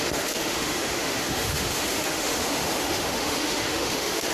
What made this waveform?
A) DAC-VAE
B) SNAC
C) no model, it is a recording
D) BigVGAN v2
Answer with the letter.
A